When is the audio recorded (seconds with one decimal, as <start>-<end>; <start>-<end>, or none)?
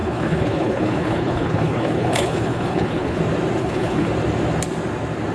3.2-3.6; 4.1-5.3